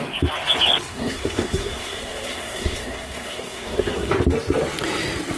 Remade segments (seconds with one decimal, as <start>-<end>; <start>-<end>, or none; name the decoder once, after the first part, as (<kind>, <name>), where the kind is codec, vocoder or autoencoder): 0.9-4.1 (codec, SNAC)